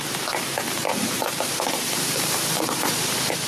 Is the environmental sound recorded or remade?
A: remade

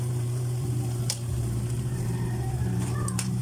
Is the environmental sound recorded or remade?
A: remade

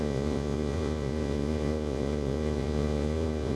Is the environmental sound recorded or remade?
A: remade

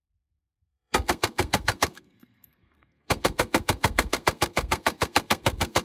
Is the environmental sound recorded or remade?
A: remade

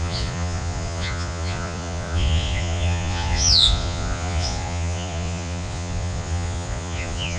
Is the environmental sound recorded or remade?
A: remade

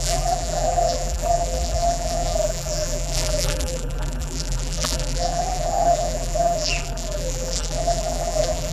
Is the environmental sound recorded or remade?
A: remade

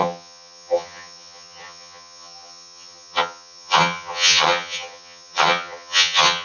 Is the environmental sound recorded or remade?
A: remade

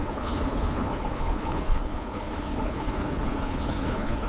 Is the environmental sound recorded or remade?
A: remade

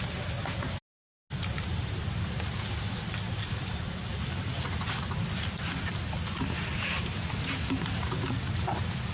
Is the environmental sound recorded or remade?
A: recorded